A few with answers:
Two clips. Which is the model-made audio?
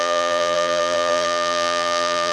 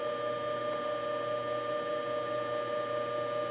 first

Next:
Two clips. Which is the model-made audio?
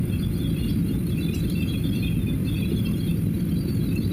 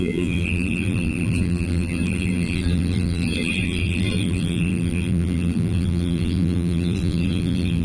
second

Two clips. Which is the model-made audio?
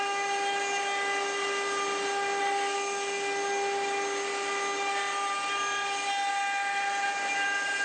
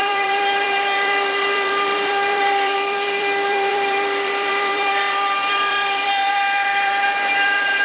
second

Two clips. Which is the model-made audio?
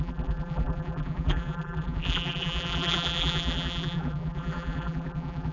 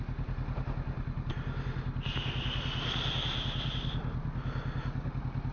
first